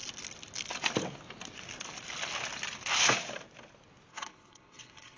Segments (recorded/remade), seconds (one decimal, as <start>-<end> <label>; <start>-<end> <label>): 0.0-4.1 recorded; 4.1-5.2 remade